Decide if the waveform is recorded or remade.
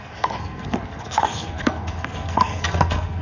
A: remade